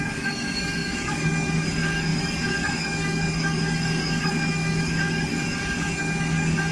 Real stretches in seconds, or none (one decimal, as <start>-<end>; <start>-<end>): none